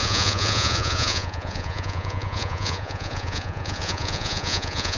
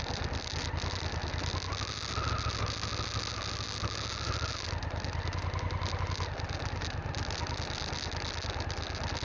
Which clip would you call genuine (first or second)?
second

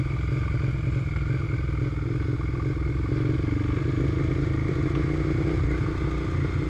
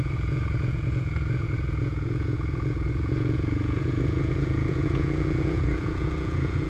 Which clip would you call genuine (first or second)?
first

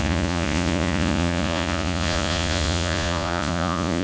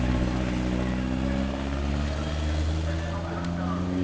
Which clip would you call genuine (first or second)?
second